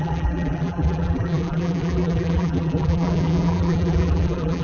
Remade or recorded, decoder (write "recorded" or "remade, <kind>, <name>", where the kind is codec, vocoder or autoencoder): remade, vocoder, BigVGAN v2